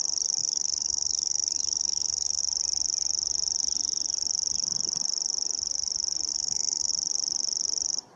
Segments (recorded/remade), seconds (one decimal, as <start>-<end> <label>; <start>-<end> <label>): 0.0-0.4 recorded; 0.4-2.4 remade; 2.4-6.3 recorded; 6.3-6.9 remade; 6.9-8.2 recorded